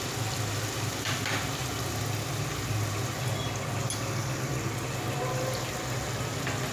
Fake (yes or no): no